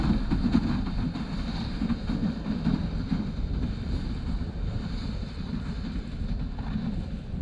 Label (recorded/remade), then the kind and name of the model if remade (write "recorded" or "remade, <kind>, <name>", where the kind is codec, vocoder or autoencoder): recorded